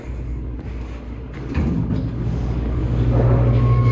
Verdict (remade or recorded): remade